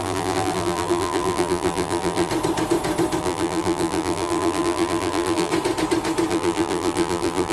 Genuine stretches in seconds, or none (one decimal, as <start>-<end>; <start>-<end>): 2.3-3.2; 5.5-6.3